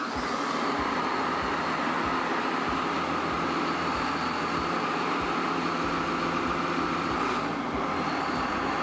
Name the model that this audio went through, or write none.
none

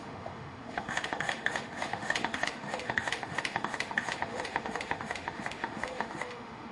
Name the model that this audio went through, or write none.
autoencoder, DAC-VAE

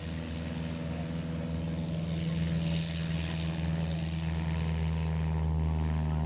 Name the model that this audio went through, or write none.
none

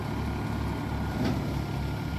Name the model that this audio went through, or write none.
none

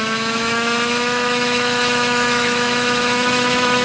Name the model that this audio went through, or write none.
autoencoder, DAC-VAE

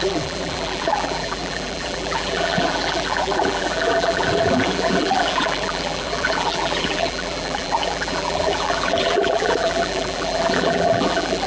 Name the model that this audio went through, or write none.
vocoder, BigVGAN v2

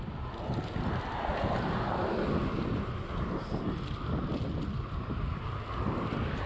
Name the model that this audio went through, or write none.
none